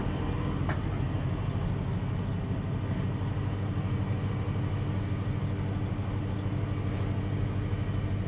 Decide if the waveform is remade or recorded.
recorded